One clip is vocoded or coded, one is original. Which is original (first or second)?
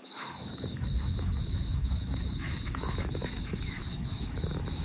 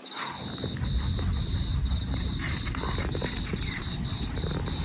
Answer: second